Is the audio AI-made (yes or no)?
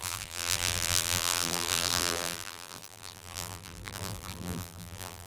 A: yes